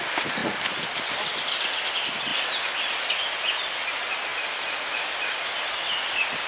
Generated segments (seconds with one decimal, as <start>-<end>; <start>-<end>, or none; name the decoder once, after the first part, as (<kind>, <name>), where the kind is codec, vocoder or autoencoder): none